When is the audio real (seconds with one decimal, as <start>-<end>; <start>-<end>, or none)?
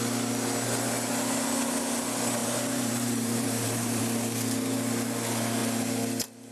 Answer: 0.0-2.4; 4.0-6.5